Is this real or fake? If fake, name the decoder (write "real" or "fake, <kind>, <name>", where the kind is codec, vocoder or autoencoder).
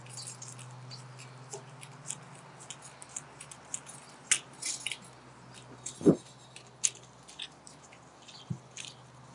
real